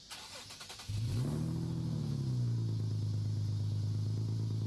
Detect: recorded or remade recorded